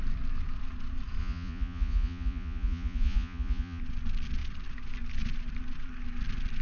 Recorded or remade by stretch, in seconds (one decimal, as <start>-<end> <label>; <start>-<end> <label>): 0.0-1.2 recorded; 1.2-3.8 remade; 3.8-6.6 recorded